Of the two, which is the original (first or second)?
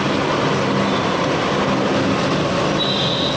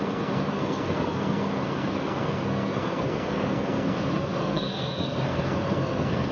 first